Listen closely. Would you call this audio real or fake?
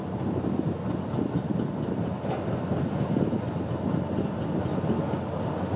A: real